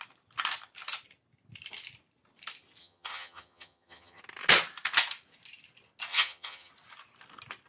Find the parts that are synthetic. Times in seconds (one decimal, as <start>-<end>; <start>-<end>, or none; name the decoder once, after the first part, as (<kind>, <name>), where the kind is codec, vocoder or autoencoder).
2.8-4.2 (vocoder, HiFi-GAN); 6.1-6.7